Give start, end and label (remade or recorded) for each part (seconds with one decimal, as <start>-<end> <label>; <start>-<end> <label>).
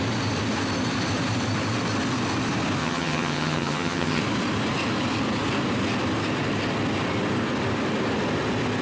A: 0.0-2.8 recorded; 2.8-4.2 remade; 4.2-8.8 recorded